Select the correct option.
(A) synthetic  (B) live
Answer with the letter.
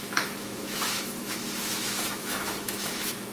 A